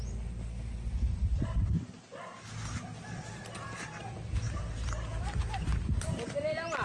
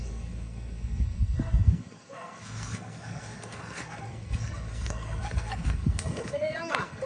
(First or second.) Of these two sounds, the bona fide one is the first